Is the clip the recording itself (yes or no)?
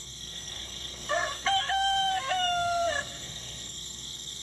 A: no